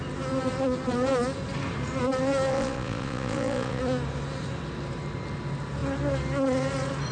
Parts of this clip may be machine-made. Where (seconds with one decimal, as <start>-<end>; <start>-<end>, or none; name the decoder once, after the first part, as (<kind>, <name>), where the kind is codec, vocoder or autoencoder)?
2.5-3.8 (vocoder, Vocos)